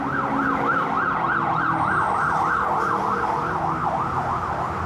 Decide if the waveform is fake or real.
real